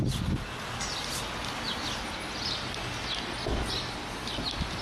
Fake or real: real